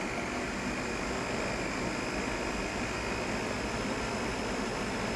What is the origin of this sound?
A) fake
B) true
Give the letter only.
B